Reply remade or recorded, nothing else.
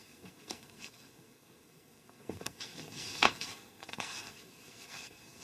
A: remade